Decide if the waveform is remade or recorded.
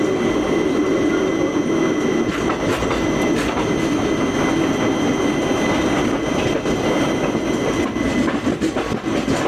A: recorded